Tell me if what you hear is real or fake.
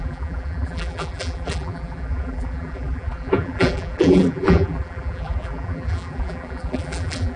fake